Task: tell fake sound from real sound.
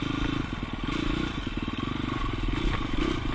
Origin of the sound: real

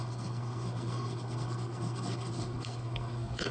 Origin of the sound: fake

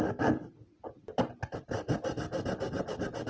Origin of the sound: real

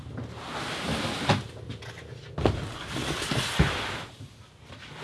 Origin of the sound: real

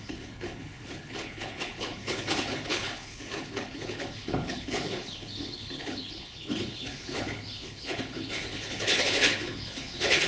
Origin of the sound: fake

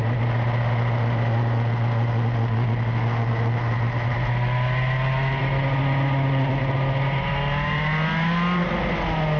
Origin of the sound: real